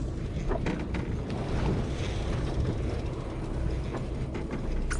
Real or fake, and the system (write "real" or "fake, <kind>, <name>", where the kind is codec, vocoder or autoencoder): real